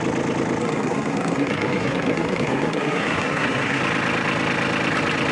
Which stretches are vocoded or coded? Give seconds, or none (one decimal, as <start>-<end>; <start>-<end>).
0.6-3.8